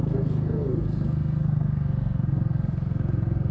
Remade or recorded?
remade